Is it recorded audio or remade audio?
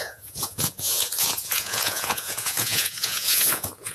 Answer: remade